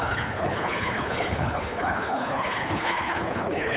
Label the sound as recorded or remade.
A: remade